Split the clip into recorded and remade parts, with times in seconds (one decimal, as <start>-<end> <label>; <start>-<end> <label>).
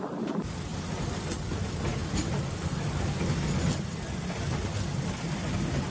0.0-5.9 recorded